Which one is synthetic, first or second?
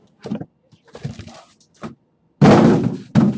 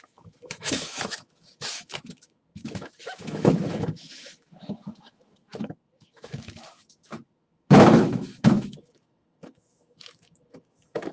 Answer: second